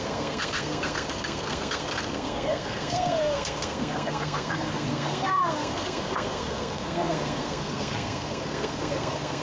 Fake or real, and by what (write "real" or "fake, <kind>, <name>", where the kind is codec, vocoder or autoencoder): fake, codec, SNAC